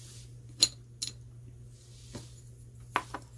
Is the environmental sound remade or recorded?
recorded